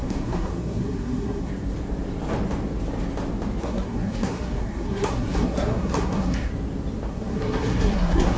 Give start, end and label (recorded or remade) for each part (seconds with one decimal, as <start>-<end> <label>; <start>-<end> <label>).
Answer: 0.0-1.5 remade; 1.5-3.6 recorded; 3.6-6.5 remade; 6.5-7.1 recorded; 7.1-8.4 remade